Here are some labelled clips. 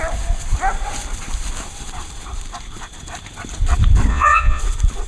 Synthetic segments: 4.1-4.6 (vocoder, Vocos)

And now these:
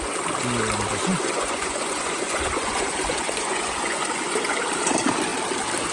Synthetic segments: 1.1-4.6 (vocoder, Vocos)

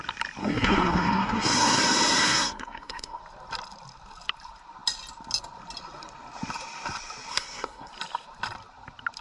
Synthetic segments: 0.4-1.8 (codec, SNAC); 2.2-3.2; 7.3-7.9

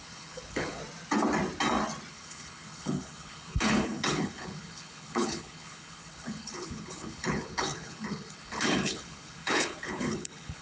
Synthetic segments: 0.0-0.8 (codec, HILCodec); 2.1-10.6

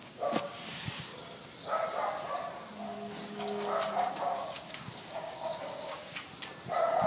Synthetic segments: 0.0-1.1 (codec, DAC); 4.1-6.1

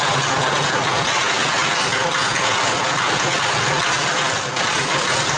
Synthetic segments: none

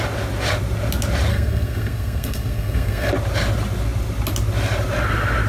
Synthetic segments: 1.3-3.1 (codec, SNAC)